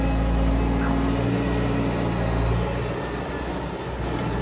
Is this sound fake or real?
real